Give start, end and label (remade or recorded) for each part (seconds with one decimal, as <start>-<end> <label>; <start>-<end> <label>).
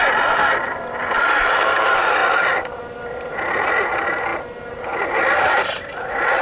0.0-6.4 recorded